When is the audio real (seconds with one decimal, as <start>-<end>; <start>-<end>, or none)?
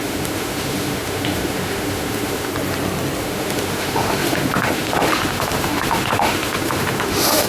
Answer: 2.5-3.2